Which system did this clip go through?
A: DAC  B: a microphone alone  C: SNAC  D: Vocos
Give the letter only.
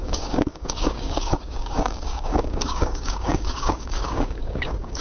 A